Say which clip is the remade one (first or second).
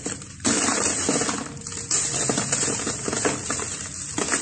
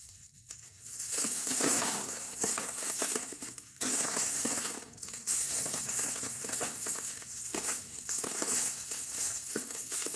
second